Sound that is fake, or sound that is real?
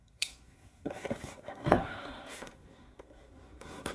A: fake